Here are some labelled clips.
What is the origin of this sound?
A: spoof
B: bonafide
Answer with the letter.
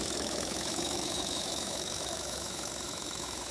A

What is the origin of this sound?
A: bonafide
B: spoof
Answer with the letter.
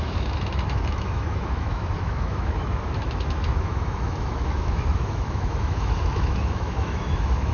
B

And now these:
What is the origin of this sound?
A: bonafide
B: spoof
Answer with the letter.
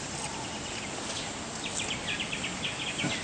A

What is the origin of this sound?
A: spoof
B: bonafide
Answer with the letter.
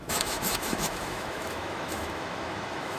A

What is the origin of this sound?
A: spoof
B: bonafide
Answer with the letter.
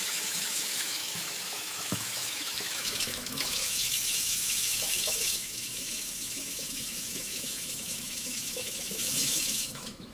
A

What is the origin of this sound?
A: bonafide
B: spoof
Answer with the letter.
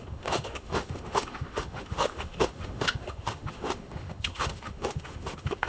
B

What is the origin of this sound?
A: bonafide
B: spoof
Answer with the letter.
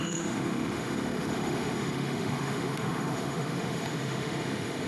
B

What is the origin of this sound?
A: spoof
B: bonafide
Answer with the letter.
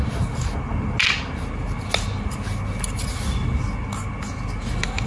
B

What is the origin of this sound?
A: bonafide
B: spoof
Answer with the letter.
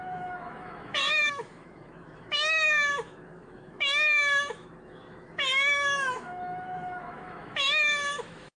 B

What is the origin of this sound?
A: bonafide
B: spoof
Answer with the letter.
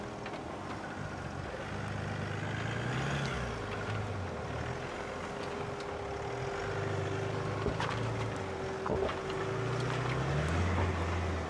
A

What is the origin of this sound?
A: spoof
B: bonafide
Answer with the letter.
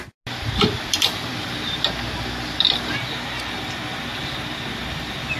B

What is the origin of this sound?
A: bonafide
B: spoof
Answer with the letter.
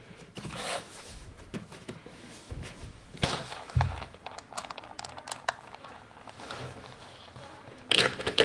B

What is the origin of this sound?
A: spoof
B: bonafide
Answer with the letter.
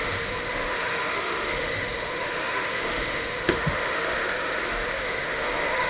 A